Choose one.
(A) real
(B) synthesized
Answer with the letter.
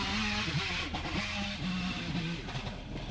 A